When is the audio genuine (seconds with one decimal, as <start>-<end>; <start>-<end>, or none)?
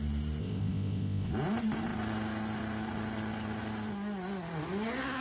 0.0-0.4; 1.3-5.2